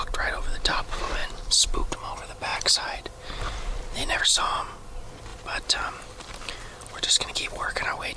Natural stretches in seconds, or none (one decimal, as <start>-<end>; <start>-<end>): 0.0-1.2; 1.9-2.5; 4.2-5.3; 7.3-8.2